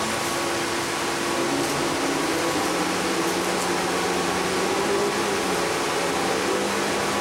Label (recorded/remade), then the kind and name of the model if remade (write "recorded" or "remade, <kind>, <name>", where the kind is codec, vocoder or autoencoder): recorded